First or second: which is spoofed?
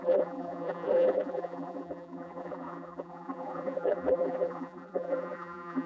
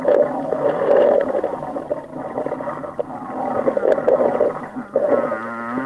first